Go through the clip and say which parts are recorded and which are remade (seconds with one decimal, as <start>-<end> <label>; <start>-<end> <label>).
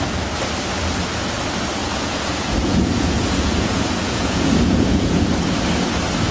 0.0-1.8 recorded; 1.8-5.3 remade; 5.3-6.3 recorded